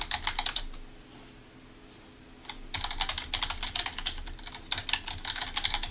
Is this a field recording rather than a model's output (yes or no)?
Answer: yes